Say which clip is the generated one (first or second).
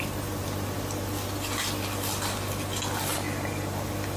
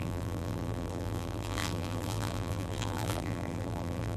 second